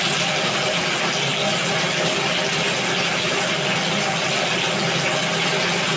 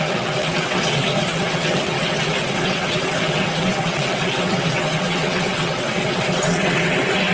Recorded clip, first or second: first